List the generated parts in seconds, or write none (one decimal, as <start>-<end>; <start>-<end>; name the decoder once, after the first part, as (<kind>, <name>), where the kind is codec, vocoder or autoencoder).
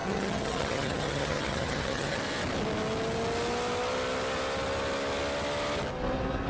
0.0-2.2 (vocoder, HiFi-GAN)